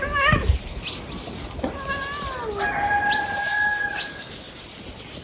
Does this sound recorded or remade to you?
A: recorded